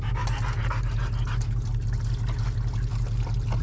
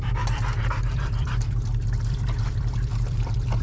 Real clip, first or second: first